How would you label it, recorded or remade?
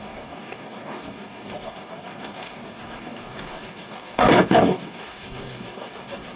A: remade